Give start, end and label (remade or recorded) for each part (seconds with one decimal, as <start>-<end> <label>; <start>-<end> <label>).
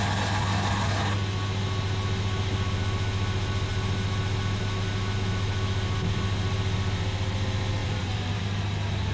0.0-7.8 recorded; 7.8-8.4 remade; 8.4-9.1 recorded